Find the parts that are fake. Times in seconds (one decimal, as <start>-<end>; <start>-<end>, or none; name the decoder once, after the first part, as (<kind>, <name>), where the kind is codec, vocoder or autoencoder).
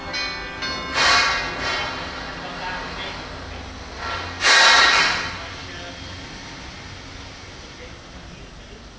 none